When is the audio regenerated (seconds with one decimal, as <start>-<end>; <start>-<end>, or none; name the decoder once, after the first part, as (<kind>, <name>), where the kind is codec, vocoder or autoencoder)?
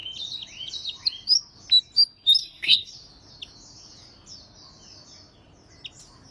2.4-2.9 (codec, SNAC)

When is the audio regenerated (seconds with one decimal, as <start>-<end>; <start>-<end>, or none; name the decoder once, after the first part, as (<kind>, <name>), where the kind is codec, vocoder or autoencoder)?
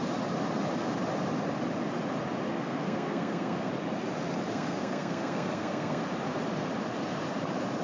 2.5-3.7 (codec, SNAC); 4.5-6.0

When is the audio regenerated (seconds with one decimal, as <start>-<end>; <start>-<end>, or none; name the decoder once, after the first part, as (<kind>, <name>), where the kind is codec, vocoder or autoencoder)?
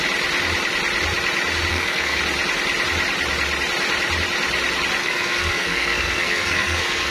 1.7-2.2 (codec, SNAC); 5.0-7.1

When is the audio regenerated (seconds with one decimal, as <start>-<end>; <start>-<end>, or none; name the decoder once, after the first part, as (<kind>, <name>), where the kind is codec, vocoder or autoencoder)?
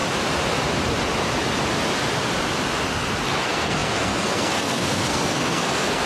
3.4-6.1 (codec, SNAC)